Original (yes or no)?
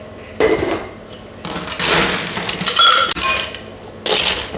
yes